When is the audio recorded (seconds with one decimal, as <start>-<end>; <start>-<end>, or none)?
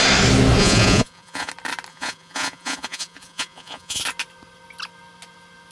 0.0-0.6; 1.5-1.9; 4.0-5.7